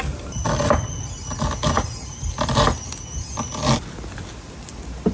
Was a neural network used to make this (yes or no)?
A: no